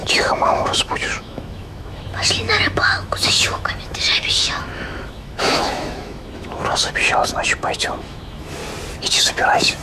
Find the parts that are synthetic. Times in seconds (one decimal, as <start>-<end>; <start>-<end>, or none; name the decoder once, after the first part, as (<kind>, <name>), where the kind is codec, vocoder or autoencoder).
0.0-8.6 (autoencoder, DAC-VAE); 9.2-9.8